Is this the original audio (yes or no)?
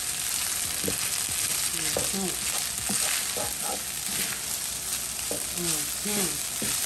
yes